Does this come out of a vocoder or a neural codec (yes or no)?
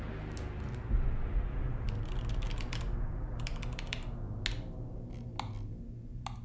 no